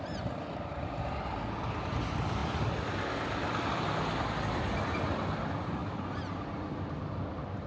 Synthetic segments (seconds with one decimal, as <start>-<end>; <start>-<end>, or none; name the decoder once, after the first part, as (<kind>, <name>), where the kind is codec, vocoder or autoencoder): none

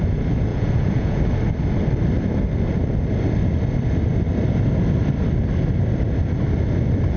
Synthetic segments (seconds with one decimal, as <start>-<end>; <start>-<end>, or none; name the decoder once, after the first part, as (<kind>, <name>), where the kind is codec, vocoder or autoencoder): 0.5-1.2 (vocoder, Vocos)